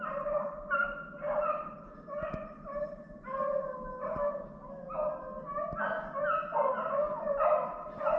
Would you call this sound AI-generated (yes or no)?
no